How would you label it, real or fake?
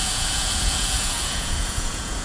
fake